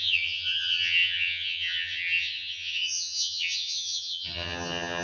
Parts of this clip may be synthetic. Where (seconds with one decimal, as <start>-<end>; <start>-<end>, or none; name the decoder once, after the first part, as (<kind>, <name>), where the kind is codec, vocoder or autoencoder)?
0.0-5.0 (vocoder, HiFi-GAN)